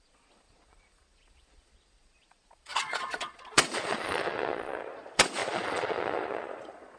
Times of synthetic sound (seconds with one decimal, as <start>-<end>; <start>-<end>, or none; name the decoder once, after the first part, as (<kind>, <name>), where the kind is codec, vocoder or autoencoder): 0.0-7.0 (vocoder, Vocos)